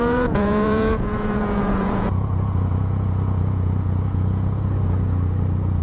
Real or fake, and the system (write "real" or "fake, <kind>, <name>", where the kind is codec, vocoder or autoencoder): fake, vocoder, Vocos